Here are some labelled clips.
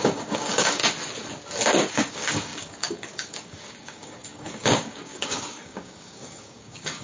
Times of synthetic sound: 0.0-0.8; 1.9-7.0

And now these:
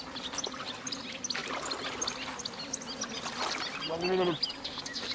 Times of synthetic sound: none

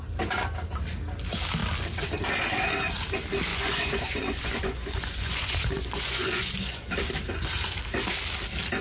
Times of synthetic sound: 3.5-6.9

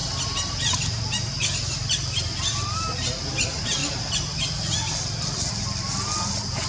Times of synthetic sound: none

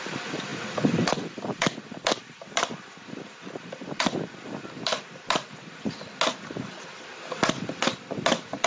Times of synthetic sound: none

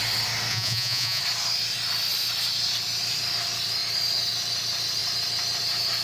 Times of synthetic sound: 0.5-1.2

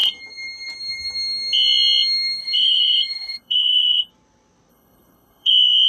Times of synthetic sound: 2.4-4.1; 4.7-5.5